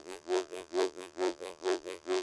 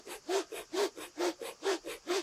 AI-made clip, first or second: first